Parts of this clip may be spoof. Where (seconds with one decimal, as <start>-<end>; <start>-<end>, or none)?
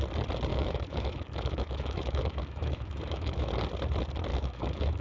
0.5-3.5; 4.3-5.0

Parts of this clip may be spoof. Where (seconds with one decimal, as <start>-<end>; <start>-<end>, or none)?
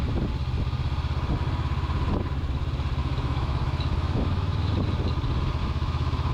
3.0-4.7; 5.6-6.3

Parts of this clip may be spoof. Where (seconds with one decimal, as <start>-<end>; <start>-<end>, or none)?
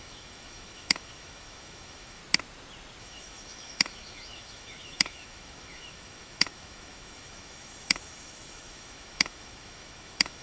0.0-2.2; 3.0-10.4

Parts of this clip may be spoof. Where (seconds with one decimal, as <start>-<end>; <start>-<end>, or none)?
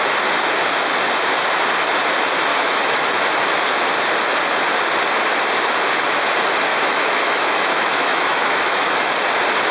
2.5-3.2; 6.7-9.1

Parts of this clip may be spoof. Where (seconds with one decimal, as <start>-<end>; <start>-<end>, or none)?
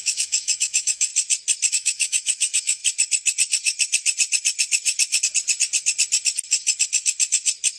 0.0-1.1; 1.7-2.8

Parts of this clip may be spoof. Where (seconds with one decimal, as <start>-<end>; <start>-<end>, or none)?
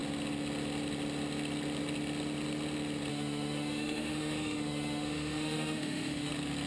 3.1-6.3